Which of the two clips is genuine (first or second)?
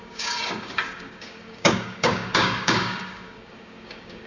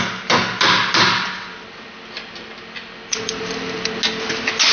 second